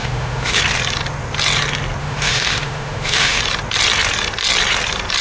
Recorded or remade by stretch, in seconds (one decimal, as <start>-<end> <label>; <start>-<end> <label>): 0.0-0.6 remade; 0.6-2.0 recorded; 2.0-3.4 remade; 3.4-5.2 recorded